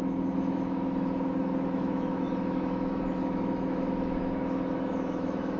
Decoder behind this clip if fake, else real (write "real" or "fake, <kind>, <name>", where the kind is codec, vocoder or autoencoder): fake, autoencoder, DAC-VAE